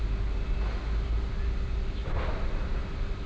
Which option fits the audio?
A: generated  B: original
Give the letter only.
B